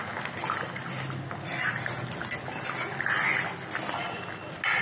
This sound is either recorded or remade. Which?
recorded